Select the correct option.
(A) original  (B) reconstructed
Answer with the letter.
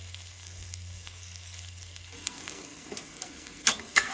B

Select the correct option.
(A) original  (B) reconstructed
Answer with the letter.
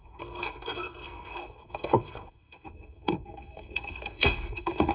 B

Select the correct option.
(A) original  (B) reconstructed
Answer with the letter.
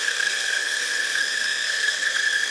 B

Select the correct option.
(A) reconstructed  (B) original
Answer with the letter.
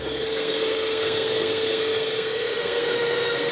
A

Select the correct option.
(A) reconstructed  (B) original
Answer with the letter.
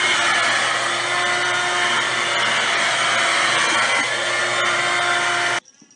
B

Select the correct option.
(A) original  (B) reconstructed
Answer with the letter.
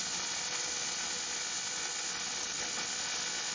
A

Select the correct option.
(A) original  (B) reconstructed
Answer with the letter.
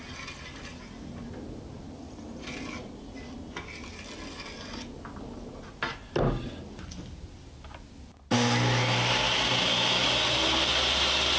A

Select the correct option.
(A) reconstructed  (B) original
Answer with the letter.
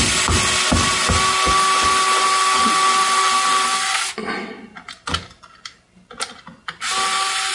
B